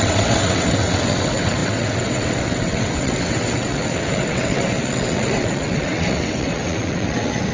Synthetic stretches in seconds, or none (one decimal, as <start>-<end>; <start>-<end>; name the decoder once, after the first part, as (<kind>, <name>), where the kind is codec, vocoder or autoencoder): 0.0-7.5 (vocoder, WaveNeXt)